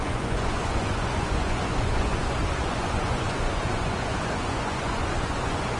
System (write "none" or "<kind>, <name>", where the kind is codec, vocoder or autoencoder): vocoder, Vocos